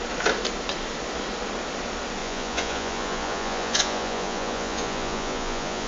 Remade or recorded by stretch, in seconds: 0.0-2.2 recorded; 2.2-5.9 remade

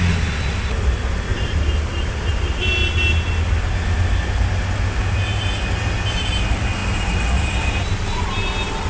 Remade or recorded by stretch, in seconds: 0.0-1.3 recorded; 1.3-2.1 remade; 2.1-6.8 recorded; 6.8-8.9 remade

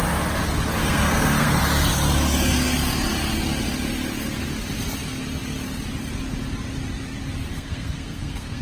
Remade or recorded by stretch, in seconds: 0.0-0.8 recorded; 0.8-1.6 remade; 1.6-7.5 recorded; 7.5-8.6 remade

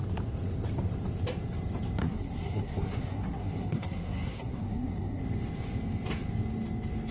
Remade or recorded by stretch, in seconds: 0.0-2.0 recorded; 2.0-5.2 remade; 5.2-7.1 recorded

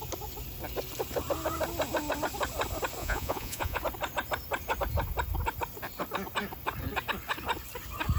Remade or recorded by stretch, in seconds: 0.0-3.0 recorded; 3.0-3.8 remade; 3.8-8.2 recorded

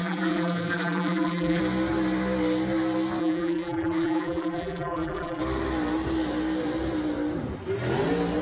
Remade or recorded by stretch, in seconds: 0.0-1.6 remade; 1.6-3.2 recorded; 3.2-5.4 remade; 5.4-8.4 recorded